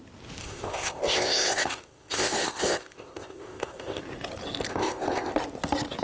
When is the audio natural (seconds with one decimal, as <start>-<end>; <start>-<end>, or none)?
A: 0.0-0.4; 4.0-4.7; 5.3-6.0